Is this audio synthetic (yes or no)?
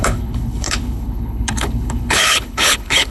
yes